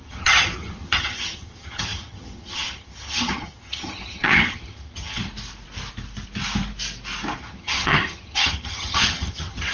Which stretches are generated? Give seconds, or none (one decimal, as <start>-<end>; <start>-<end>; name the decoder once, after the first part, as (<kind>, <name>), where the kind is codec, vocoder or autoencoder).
0.0-5.2 (vocoder, HiFi-GAN); 7.4-9.7